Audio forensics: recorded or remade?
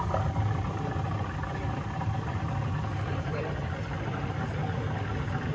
recorded